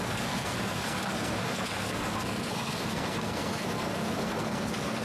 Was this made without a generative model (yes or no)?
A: no